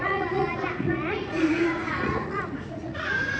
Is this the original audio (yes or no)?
no